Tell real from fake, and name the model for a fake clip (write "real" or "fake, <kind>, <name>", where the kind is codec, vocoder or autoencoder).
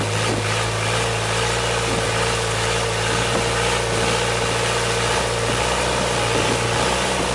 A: real